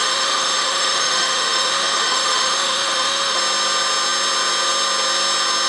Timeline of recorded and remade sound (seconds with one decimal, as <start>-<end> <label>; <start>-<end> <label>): 0.0-3.4 remade; 3.4-5.7 recorded